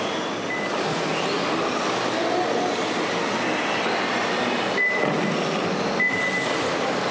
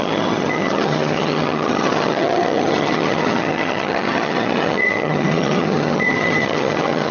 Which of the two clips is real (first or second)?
first